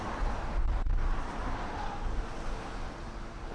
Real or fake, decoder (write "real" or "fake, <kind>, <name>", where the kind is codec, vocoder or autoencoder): real